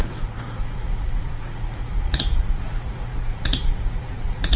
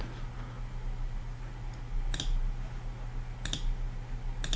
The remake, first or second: first